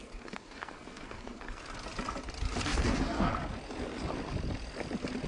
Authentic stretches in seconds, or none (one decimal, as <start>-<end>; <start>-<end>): 1.6-2.7; 3.3-5.3